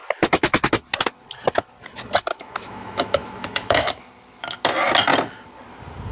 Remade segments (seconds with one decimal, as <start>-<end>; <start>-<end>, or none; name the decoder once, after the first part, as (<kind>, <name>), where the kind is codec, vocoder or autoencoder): 2.3-4.0 (autoencoder, DAC-VAE)